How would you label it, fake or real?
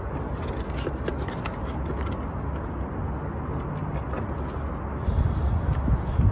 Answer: real